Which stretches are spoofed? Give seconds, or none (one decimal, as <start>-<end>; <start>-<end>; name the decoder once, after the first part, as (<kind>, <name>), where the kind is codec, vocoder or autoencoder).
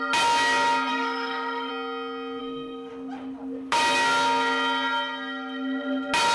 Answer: 0.9-1.7 (codec, SNAC); 2.4-2.9